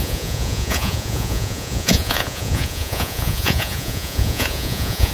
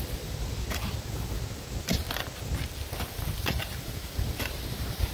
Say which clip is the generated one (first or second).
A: first